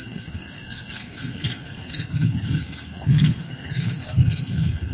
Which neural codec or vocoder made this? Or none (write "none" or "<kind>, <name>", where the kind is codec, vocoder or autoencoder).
codec, SNAC